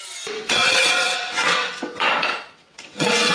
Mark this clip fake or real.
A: fake